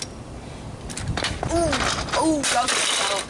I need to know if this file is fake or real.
real